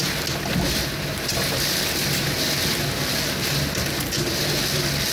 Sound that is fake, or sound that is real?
real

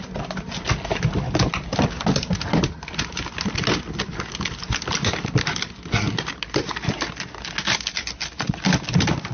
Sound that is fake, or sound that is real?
real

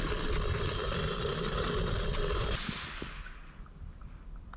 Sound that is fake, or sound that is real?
real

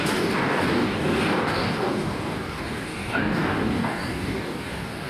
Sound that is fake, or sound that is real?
fake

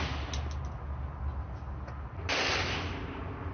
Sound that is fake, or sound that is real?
real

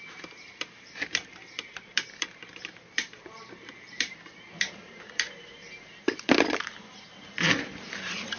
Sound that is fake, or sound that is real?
fake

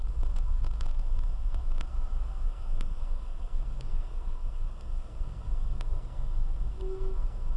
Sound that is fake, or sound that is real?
fake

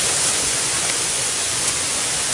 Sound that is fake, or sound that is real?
fake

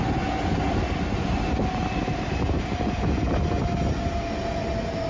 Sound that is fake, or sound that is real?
real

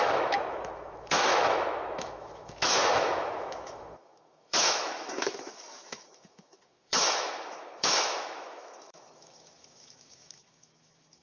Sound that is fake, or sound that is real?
fake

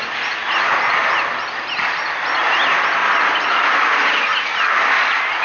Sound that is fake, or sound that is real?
real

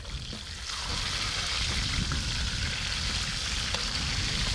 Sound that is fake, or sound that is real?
real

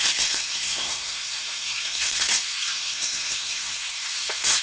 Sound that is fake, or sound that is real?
fake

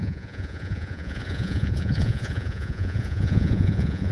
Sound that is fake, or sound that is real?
fake